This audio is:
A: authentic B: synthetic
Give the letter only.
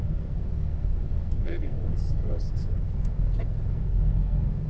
B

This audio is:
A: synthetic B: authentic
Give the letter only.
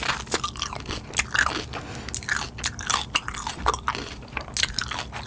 B